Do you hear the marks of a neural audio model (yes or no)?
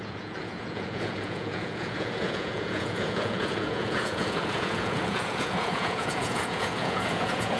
yes